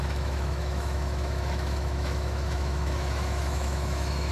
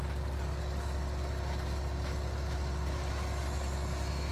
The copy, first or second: first